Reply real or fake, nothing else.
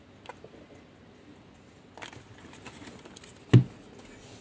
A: real